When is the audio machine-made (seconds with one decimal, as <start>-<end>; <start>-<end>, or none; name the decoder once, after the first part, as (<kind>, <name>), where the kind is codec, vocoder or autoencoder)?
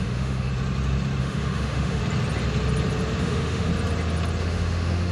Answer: 0.0-0.5 (autoencoder, DAC-VAE); 1.2-2.0; 3.2-3.7; 4.4-5.1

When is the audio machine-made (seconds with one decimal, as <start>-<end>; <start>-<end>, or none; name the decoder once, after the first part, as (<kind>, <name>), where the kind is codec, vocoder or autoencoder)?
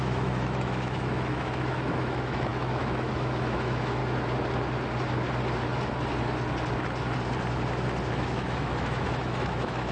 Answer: 0.0-4.0 (autoencoder, DAC-VAE); 8.1-9.9